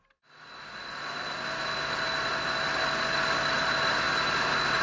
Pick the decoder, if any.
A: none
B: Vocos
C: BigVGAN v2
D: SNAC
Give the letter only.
A